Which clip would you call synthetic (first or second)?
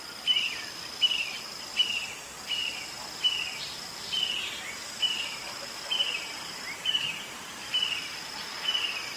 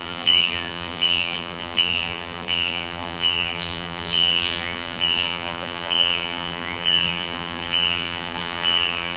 second